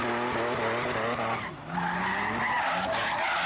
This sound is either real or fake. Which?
real